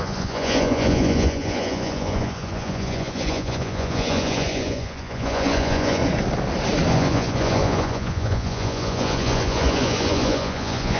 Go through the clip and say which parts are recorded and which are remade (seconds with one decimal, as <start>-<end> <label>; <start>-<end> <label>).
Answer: 0.0-6.0 remade; 6.0-6.9 recorded; 6.9-11.0 remade